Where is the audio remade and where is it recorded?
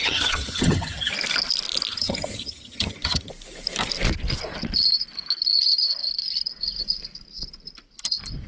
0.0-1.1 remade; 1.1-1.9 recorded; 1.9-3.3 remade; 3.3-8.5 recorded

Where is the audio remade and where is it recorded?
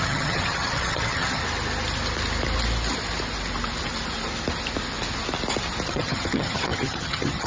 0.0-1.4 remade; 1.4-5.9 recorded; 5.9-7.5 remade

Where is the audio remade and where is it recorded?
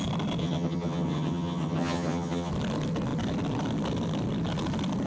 0.0-0.4 recorded; 0.4-2.5 remade; 2.5-5.1 recorded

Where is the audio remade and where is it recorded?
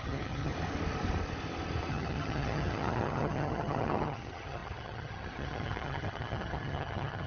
0.0-0.5 remade; 0.5-1.9 recorded; 1.9-7.3 remade